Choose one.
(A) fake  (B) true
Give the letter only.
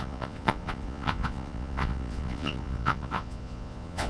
A